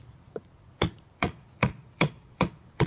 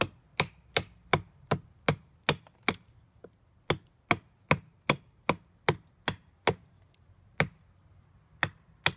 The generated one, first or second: first